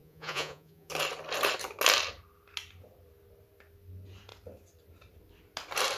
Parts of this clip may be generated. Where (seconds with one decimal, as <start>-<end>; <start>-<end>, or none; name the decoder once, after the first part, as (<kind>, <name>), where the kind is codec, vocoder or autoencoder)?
0.0-0.9 (vocoder, Vocos)